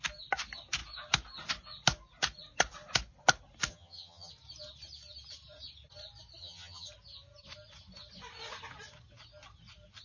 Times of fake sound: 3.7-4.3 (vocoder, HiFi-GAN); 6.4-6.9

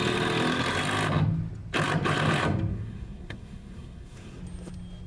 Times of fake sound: 2.7-4.4 (codec, SNAC)

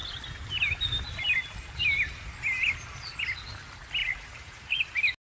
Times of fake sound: 4.0-4.8 (vocoder, Vocos)

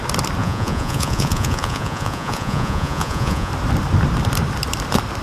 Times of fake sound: 0.4-3.5 (vocoder, Vocos)

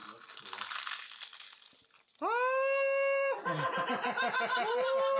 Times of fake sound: none

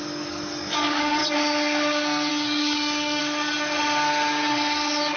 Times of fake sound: 0.0-1.2 (codec, DAC); 2.3-3.2